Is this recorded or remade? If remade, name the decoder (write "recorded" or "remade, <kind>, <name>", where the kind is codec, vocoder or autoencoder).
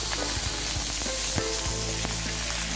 recorded